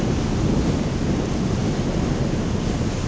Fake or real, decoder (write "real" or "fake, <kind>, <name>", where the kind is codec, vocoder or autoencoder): real